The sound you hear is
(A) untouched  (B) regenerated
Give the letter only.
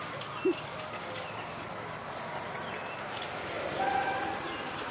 A